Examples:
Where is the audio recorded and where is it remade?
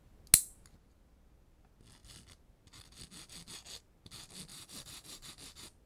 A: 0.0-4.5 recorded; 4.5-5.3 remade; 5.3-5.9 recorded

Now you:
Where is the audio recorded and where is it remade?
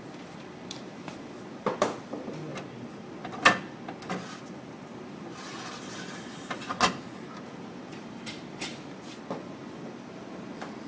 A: 0.0-2.5 remade; 2.5-7.6 recorded; 7.6-10.9 remade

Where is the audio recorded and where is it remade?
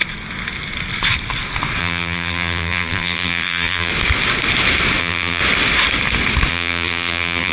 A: 0.0-1.8 recorded; 1.8-3.9 remade; 3.9-5.0 recorded; 5.0-5.4 remade; 5.4-6.5 recorded; 6.5-7.5 remade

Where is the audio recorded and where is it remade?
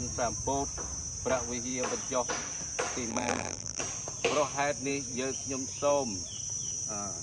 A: 0.0-3.1 recorded; 3.1-3.8 remade; 3.8-7.2 recorded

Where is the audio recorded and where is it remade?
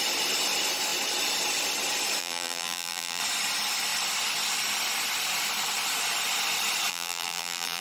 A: 0.0-2.2 recorded; 2.2-3.2 remade; 3.2-6.9 recorded; 6.9-7.8 remade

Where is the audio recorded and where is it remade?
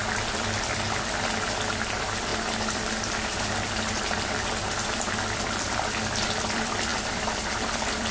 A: 0.0-2.3 remade; 2.3-4.0 recorded; 4.0-8.1 remade